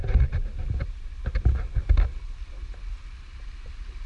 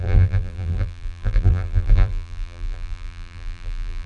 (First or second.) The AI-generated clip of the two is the second